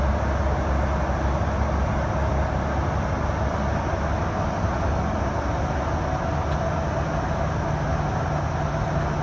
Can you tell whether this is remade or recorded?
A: recorded